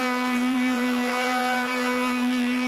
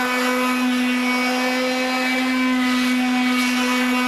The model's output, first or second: first